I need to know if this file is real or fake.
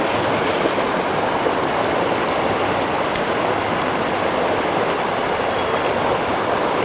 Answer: real